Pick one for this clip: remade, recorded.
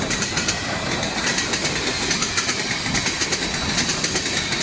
recorded